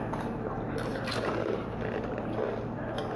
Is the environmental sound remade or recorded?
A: recorded